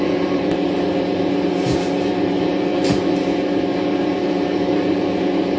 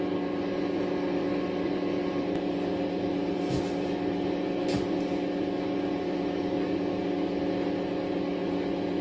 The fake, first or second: first